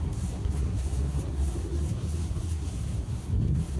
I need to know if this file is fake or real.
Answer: fake